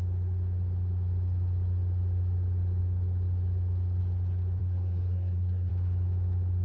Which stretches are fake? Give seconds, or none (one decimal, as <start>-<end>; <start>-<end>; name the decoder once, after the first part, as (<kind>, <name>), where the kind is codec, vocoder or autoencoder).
4.6-5.7 (codec, SNAC)